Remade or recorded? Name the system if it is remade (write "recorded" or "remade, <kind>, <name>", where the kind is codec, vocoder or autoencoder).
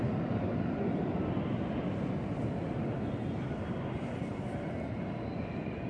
recorded